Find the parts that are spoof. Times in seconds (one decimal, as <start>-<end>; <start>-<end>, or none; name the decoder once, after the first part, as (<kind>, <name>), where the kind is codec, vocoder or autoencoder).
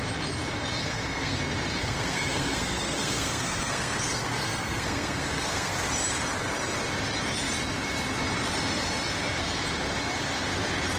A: 0.8-1.4 (codec, SNAC); 1.8-5.7